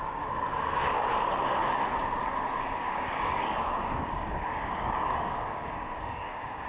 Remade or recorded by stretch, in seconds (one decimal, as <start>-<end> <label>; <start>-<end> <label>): 0.0-2.8 recorded; 2.8-6.7 remade